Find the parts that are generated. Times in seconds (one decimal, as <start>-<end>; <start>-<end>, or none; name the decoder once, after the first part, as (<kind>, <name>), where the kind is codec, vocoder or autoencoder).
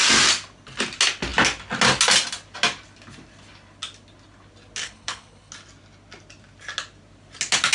4.8-5.5 (codec, HILCodec)